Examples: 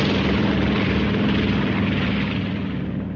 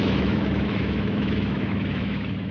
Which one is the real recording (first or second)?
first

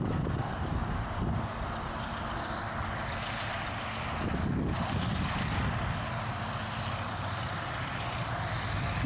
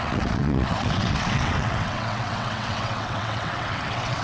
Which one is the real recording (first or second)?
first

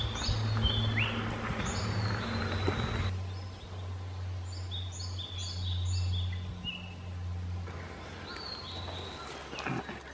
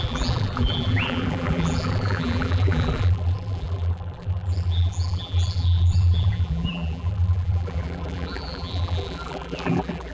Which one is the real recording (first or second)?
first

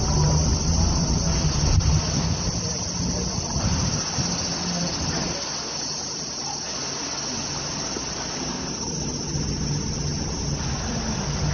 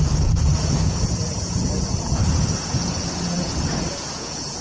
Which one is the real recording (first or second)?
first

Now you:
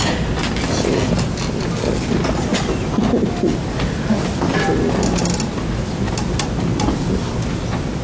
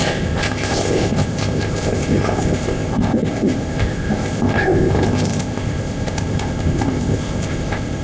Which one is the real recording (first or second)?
first